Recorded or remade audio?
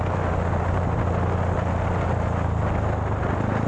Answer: recorded